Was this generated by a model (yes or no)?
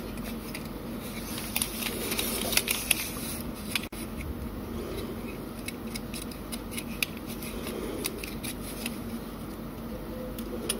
no